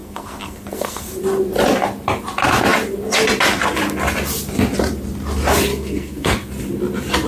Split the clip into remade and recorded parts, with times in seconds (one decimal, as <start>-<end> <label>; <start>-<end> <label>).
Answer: 0.0-1.1 remade; 1.1-5.7 recorded; 5.7-6.5 remade; 6.5-7.3 recorded